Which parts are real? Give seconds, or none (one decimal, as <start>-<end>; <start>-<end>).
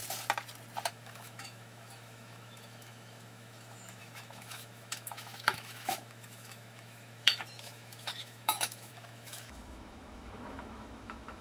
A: 0.0-0.9